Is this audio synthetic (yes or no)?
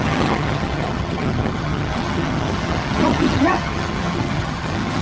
yes